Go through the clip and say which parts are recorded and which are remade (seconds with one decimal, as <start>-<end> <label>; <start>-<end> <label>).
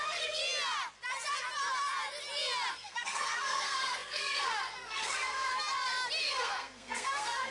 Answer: 0.0-0.4 remade; 0.4-2.7 recorded; 2.7-5.5 remade; 5.5-6.2 recorded; 6.2-7.5 remade